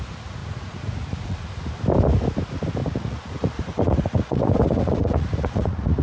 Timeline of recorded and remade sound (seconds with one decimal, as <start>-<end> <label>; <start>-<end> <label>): 0.0-0.4 recorded; 0.4-1.5 remade; 1.5-2.8 recorded; 2.8-6.0 remade